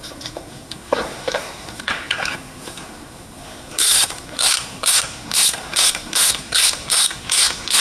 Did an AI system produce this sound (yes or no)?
yes